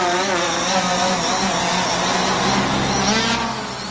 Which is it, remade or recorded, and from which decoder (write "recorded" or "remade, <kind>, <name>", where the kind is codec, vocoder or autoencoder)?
recorded